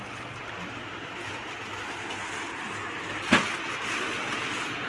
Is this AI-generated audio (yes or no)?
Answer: no